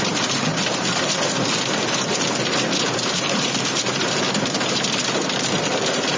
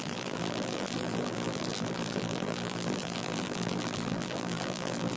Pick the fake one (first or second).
second